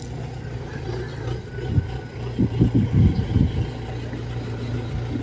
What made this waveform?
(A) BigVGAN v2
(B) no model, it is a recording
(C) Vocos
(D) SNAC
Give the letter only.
B